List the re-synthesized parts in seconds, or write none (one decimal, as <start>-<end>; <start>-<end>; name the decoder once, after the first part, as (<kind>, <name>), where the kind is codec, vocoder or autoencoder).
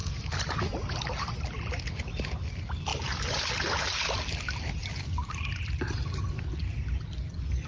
0.0-0.6 (vocoder, BigVGAN v2)